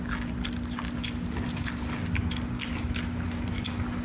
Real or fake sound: real